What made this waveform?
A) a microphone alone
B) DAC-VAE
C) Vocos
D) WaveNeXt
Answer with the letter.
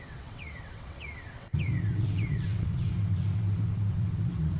D